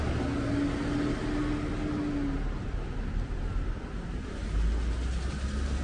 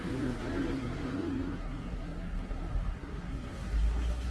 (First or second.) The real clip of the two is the first